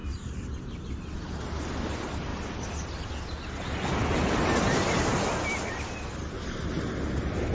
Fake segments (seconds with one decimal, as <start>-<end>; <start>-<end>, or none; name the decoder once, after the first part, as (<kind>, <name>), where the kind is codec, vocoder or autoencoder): 0.0-0.8 (vocoder, BigVGAN v2)